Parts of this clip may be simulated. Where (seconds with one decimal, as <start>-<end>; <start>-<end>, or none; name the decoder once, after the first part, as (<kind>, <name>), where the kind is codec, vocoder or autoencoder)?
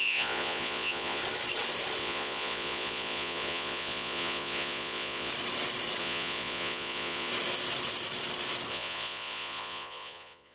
0.0-1.2 (vocoder, Vocos); 2.0-5.3; 6.0-7.3; 8.7-10.5